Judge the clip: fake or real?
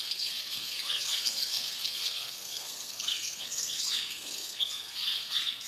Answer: fake